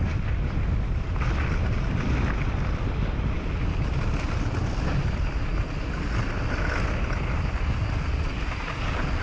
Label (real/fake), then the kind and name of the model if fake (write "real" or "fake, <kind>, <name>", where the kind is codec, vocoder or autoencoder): real